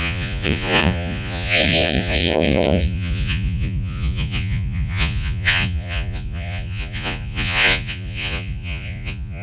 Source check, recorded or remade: remade